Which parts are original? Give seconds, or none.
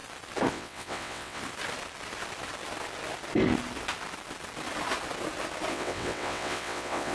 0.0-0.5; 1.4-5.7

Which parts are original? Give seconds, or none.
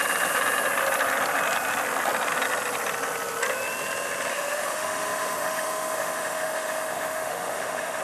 0.0-4.3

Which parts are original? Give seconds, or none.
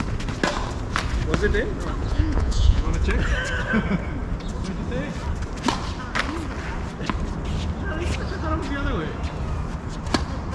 0.0-2.0; 3.1-10.5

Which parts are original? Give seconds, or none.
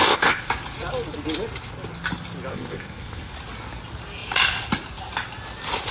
0.5-2.5; 3.3-5.9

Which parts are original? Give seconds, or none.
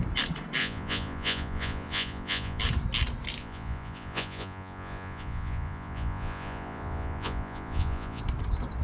0.0-0.6; 2.6-3.4; 8.2-8.8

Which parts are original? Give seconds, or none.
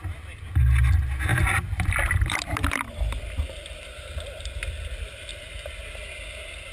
0.0-1.3; 5.3-6.7